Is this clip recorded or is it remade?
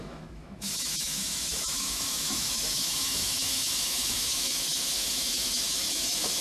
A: remade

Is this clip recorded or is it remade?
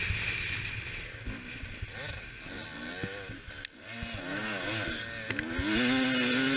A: recorded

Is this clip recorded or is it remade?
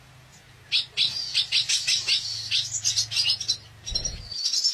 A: recorded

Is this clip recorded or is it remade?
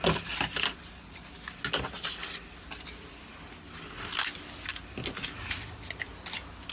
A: recorded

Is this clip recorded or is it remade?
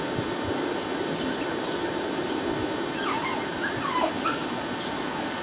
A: recorded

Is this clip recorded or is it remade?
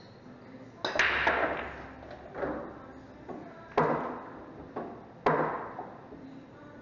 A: recorded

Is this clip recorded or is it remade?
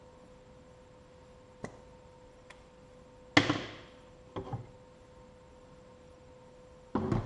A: recorded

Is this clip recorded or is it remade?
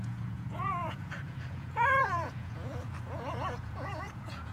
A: remade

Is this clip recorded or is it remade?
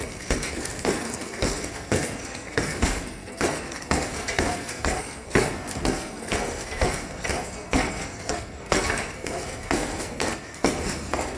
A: remade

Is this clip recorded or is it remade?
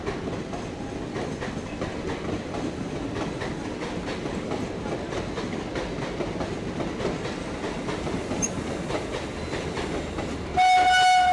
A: recorded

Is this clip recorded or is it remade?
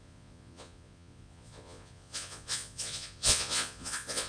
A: remade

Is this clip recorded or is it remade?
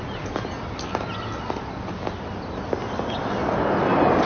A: recorded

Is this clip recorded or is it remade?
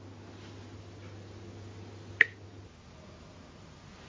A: recorded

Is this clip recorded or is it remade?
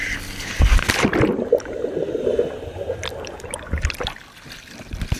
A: recorded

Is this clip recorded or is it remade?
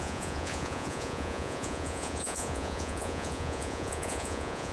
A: remade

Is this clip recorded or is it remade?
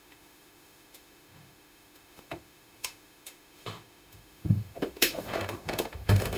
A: remade